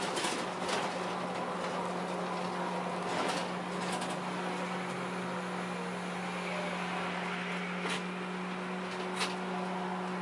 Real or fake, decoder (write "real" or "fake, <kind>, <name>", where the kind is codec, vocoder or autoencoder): real